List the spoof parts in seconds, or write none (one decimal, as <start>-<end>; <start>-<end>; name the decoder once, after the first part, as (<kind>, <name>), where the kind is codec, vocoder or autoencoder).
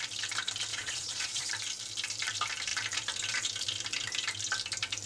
0.7-1.5 (vocoder, Vocos)